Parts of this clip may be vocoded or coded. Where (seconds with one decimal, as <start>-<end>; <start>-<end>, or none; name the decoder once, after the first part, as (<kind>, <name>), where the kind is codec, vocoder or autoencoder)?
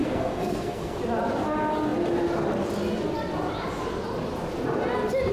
0.0-1.0 (codec, SNAC)